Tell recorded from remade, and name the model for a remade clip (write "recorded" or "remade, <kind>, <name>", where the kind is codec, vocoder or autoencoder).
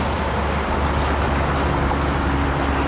recorded